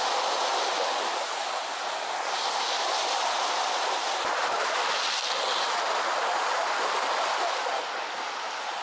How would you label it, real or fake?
real